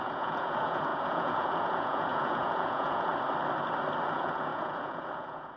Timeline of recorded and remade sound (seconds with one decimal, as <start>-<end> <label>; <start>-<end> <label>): 0.0-3.1 remade; 3.1-4.1 recorded; 4.1-5.6 remade